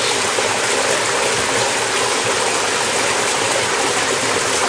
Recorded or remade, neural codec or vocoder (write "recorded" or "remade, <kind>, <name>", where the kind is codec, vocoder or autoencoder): recorded